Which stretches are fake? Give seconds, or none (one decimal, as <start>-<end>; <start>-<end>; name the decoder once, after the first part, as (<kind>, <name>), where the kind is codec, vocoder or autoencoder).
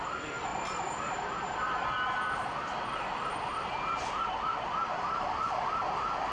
none